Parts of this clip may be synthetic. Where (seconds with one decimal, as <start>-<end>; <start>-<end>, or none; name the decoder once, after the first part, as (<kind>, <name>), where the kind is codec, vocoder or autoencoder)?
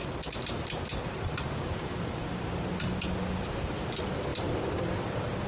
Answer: 0.0-3.1 (vocoder, BigVGAN v2); 4.3-4.9